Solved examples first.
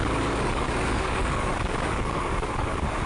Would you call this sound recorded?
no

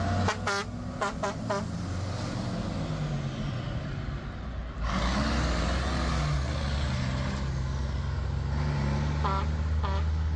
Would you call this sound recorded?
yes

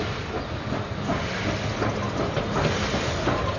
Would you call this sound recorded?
yes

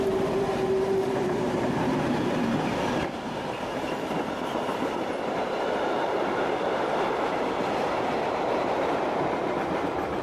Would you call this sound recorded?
no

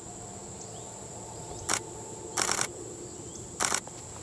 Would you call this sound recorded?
yes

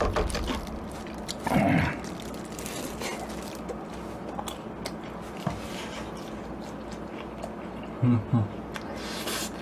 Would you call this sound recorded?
yes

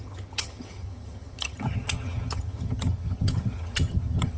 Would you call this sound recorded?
no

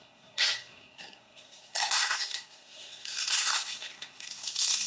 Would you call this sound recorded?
no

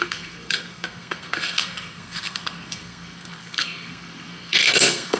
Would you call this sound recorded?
no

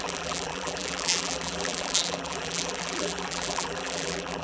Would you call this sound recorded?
no